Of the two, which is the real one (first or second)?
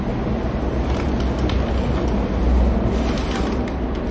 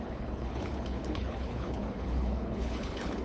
first